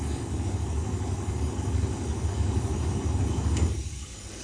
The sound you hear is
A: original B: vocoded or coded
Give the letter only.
B